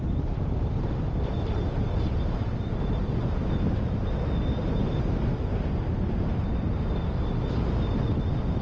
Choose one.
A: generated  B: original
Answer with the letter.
B